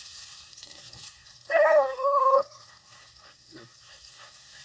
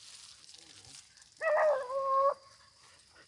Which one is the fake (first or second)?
first